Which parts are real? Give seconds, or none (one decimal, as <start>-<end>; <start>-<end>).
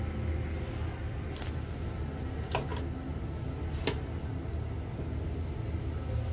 0.0-6.3